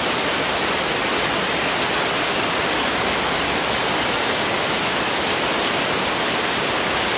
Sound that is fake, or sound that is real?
real